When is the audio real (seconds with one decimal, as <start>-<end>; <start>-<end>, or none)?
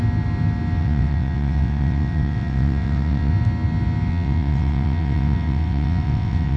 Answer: 0.0-0.8; 3.3-4.1